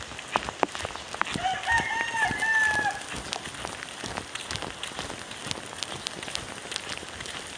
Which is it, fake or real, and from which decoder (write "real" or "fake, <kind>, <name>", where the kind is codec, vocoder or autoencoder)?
real